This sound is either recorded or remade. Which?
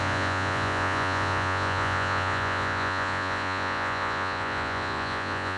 remade